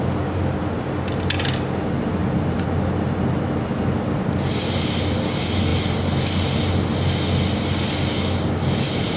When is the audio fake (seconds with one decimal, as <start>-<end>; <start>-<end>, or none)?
none